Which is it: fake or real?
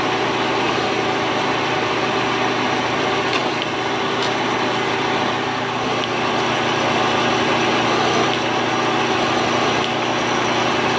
real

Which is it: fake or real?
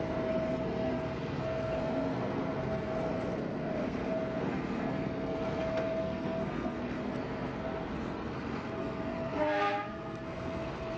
fake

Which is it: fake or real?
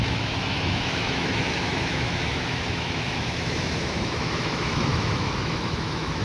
fake